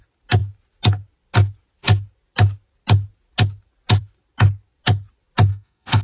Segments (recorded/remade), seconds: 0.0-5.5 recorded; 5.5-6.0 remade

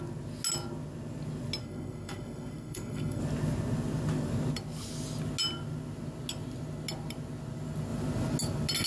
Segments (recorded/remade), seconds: 0.0-1.6 recorded; 1.6-3.2 remade; 3.2-8.9 recorded

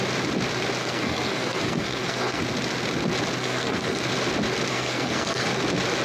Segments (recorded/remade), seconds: 0.0-0.8 recorded; 0.8-2.4 remade; 2.4-3.4 recorded; 3.4-4.0 remade; 4.0-4.7 recorded; 4.7-5.5 remade; 5.5-6.0 recorded

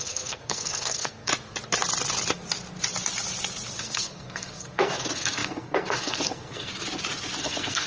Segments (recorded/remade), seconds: 0.0-1.3 remade; 1.3-3.8 recorded; 3.8-6.7 remade; 6.7-7.4 recorded; 7.4-7.9 remade

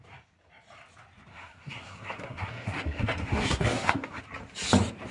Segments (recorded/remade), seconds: 0.0-1.3 recorded; 1.3-4.2 remade; 4.2-5.1 recorded

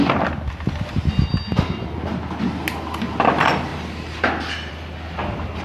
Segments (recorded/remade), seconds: 0.0-5.6 recorded